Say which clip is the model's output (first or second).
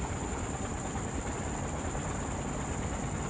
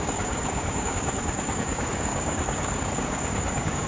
second